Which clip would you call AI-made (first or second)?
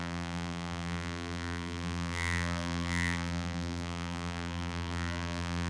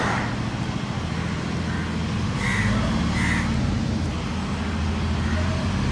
first